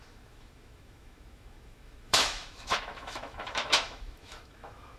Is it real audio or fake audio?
fake